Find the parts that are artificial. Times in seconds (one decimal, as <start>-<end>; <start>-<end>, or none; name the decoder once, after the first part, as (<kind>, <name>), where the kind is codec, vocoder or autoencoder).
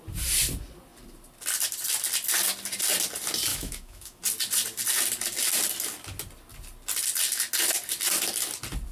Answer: 3.5-4.2 (autoencoder, DAC-VAE)